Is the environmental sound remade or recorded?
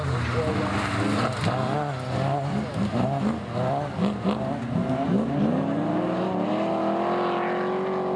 recorded